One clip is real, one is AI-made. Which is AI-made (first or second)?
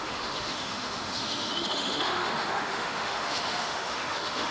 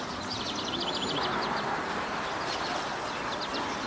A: first